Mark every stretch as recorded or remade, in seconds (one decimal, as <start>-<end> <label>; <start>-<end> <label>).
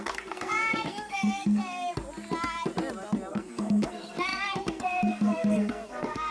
0.0-1.6 remade; 1.6-3.3 recorded; 3.3-6.3 remade